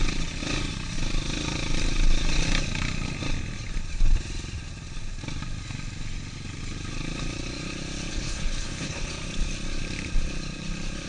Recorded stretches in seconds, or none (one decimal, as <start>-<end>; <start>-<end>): 0.0-8.1; 9.1-11.1